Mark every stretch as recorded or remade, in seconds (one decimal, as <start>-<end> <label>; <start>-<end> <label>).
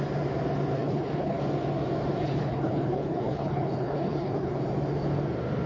0.0-0.7 recorded; 0.7-1.4 remade; 1.4-2.2 recorded; 2.2-4.6 remade; 4.6-5.7 recorded